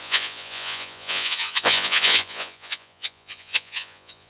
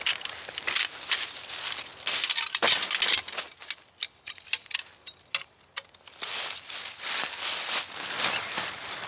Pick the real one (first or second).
second